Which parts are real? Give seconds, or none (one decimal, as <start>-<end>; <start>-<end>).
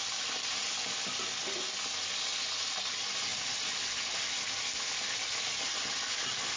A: 0.0-6.6